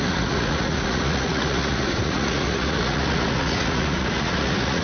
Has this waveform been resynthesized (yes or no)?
yes